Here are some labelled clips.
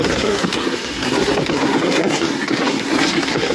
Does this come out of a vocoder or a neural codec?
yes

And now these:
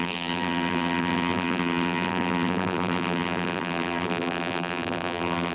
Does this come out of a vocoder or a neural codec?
yes